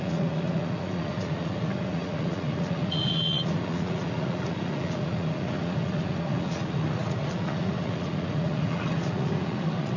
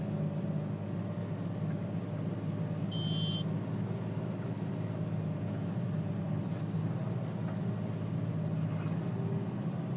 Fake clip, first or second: first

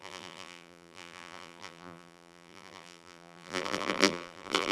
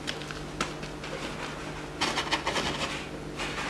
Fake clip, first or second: first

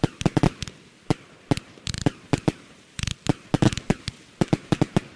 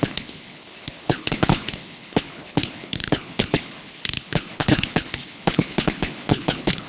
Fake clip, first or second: second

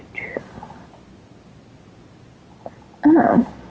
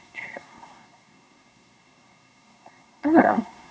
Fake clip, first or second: second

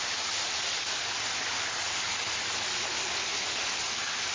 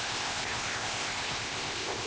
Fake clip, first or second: second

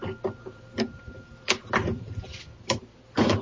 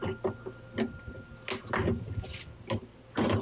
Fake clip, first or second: first